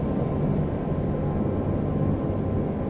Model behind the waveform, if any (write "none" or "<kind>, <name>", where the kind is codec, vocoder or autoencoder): none